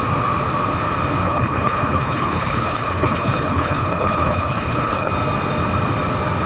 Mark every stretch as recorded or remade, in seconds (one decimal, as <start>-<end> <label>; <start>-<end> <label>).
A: 0.0-1.2 recorded; 1.2-5.1 remade; 5.1-6.5 recorded